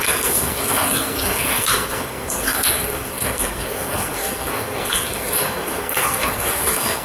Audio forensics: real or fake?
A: fake